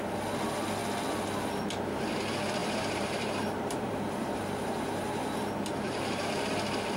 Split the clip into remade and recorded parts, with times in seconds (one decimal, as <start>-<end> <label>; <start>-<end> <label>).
0.0-2.6 recorded; 2.6-6.2 remade; 6.2-7.0 recorded